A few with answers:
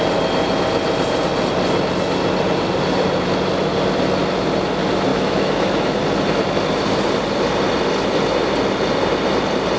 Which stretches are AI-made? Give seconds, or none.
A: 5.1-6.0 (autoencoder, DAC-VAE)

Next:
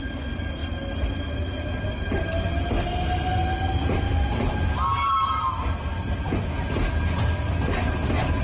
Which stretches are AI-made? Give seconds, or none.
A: none

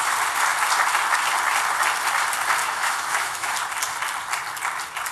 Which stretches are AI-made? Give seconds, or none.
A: 2.6-3.5 (autoencoder, DAC-VAE)

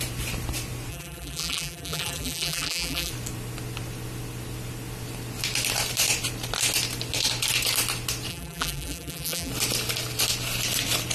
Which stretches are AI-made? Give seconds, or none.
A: 0.9-3.1 (vocoder, BigVGAN v2); 8.3-9.5